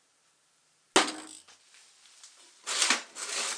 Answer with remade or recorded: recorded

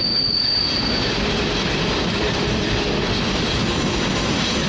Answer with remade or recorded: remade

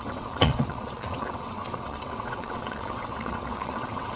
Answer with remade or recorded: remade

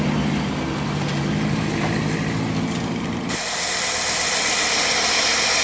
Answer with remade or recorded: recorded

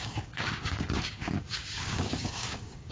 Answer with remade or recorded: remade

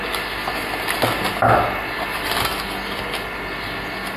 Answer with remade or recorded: recorded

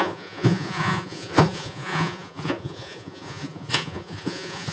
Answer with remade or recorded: remade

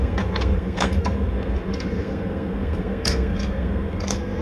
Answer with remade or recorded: remade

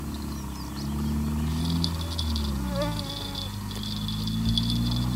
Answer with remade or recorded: recorded